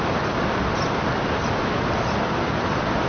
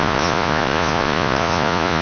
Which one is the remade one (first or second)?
second